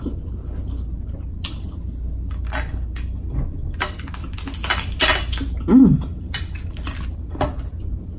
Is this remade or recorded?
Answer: recorded